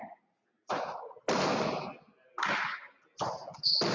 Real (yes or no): yes